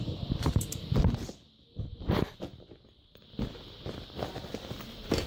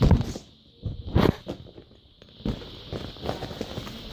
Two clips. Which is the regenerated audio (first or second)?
first